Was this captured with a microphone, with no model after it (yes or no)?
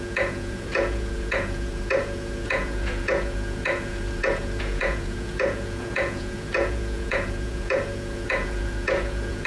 no